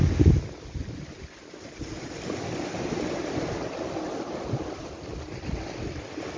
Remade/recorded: recorded